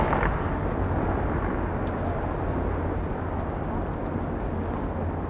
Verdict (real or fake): real